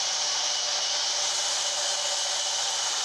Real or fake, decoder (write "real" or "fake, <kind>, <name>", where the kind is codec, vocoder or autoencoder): real